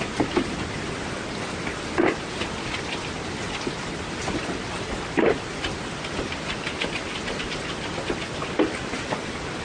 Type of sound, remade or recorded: recorded